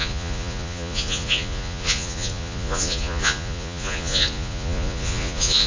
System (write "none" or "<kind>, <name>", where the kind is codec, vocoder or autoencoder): vocoder, Vocos